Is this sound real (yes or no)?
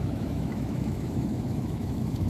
no